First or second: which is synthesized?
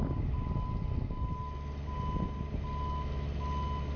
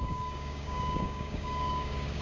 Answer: second